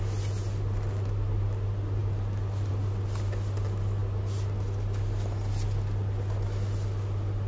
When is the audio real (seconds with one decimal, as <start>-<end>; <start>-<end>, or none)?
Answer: 0.0-7.5